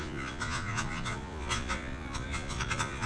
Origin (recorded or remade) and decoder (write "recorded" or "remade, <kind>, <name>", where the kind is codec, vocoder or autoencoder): remade, vocoder, Vocos